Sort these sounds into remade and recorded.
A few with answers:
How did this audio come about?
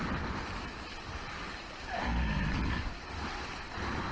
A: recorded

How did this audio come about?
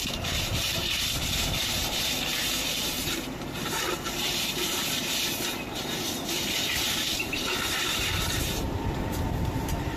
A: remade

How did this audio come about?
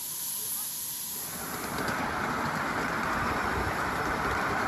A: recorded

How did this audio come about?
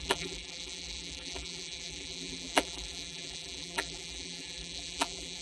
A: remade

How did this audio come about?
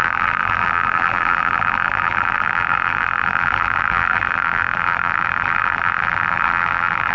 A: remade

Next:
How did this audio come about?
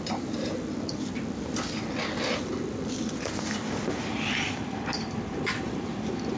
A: remade